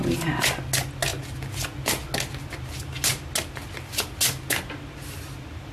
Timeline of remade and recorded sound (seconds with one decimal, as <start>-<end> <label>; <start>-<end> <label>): 0.0-5.7 recorded